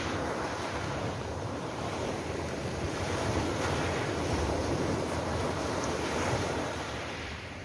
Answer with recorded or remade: remade